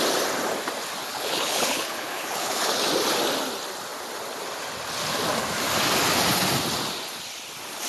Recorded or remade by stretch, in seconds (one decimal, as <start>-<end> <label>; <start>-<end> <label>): 0.0-1.0 recorded; 1.0-2.8 remade; 2.8-7.9 recorded